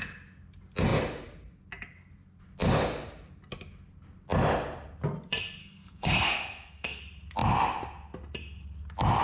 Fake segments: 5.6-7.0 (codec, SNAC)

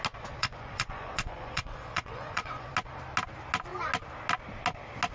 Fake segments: 0.4-2.7 (vocoder, Vocos)

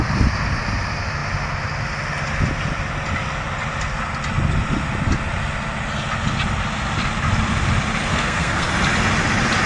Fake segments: 8.1-8.7 (codec, SNAC)

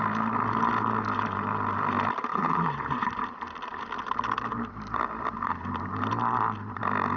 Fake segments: none